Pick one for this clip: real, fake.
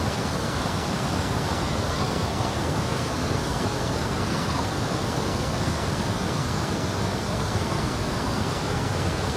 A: fake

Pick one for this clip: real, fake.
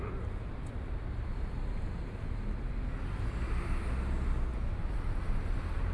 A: real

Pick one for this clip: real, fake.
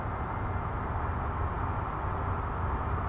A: real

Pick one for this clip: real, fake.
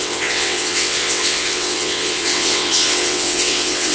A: fake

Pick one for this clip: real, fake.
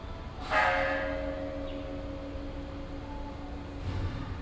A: real